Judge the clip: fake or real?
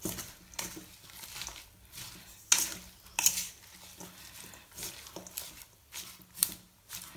real